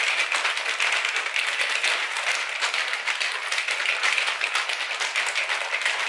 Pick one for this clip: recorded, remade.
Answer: recorded